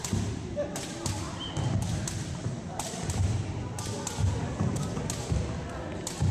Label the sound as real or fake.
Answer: real